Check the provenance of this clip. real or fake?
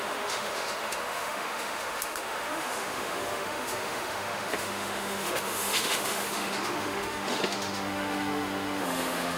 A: fake